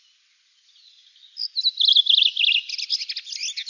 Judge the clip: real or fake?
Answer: real